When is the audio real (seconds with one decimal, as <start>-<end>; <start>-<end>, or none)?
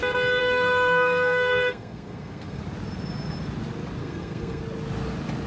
0.0-0.4; 2.6-4.0; 4.6-5.5